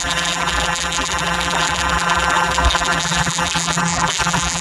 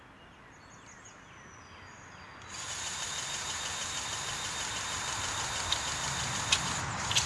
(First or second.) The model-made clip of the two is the first